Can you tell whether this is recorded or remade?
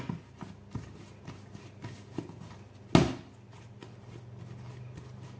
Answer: recorded